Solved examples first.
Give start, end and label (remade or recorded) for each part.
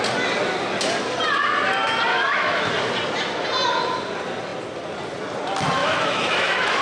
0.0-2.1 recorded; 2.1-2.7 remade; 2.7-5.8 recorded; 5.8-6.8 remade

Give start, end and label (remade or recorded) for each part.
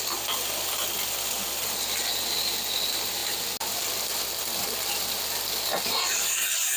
0.0-6.8 recorded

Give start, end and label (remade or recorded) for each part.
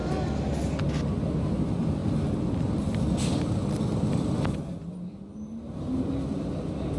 0.0-7.0 recorded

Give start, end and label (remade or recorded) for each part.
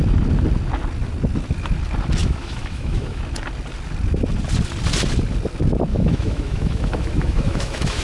0.0-2.2 recorded; 2.2-3.2 remade; 3.2-5.9 recorded; 5.9-8.0 remade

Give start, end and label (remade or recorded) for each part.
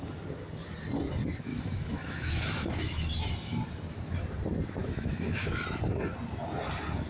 0.0-1.5 recorded; 1.5-3.1 remade; 3.1-4.8 recorded; 4.8-5.8 remade; 5.8-7.1 recorded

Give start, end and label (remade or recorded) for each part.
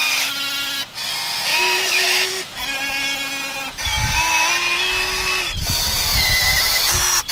0.0-1.5 recorded; 1.5-2.3 remade; 2.3-7.3 recorded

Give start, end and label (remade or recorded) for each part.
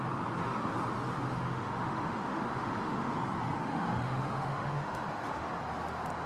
0.0-1.1 recorded; 1.1-3.1 remade; 3.1-3.6 recorded; 3.6-5.5 remade; 5.5-6.3 recorded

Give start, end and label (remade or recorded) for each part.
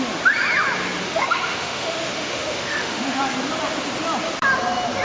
0.0-1.0 recorded; 1.0-3.2 remade; 3.2-5.0 recorded